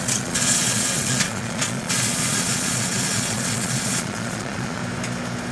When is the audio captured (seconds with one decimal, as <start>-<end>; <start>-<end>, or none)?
4.8-5.5

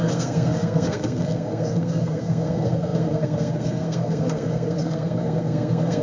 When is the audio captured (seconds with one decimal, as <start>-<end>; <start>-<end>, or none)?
none

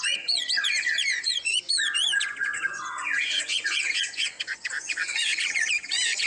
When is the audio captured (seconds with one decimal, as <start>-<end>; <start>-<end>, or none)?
none

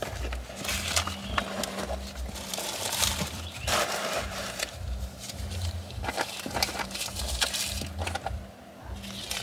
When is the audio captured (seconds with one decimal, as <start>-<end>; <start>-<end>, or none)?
0.0-2.5; 7.4-9.4

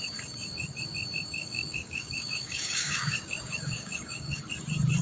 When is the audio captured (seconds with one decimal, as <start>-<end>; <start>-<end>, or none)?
0.0-1.4; 4.4-5.0

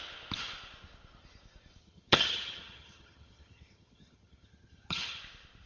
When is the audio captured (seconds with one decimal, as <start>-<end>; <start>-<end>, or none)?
0.0-1.8; 5.2-5.7

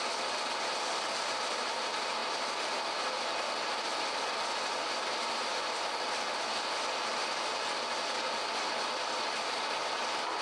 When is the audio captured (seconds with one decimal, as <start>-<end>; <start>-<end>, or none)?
0.0-5.5; 8.7-10.4